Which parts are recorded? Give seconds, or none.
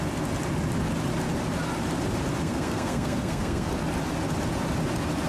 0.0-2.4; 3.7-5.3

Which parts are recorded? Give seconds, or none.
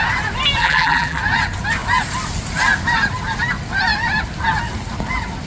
0.0-0.6; 1.2-5.5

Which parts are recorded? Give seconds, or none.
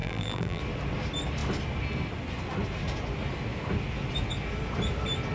0.6-5.3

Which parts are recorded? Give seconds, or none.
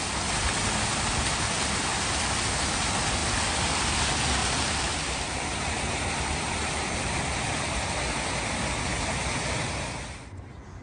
0.0-4.4; 7.5-10.8